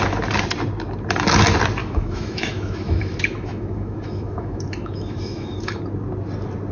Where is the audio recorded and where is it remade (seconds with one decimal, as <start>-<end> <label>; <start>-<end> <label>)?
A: 0.0-1.8 recorded; 1.8-5.8 remade; 5.8-6.7 recorded